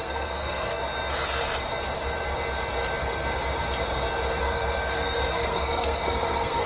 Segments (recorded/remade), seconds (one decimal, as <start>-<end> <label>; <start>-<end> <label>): 0.0-0.8 remade; 0.8-4.4 recorded; 4.4-6.7 remade